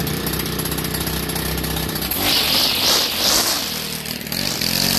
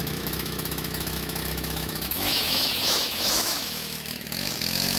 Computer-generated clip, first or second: second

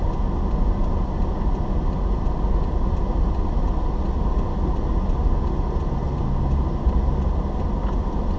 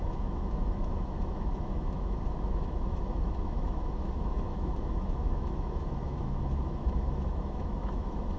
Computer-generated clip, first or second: second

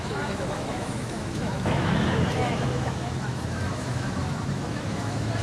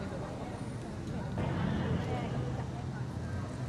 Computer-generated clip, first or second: first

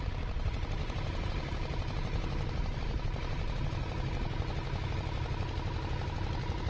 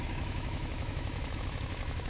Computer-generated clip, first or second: second